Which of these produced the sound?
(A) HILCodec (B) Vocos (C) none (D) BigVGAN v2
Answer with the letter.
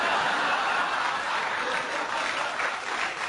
D